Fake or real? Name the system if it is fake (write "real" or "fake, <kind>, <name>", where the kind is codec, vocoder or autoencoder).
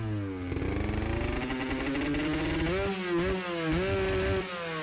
real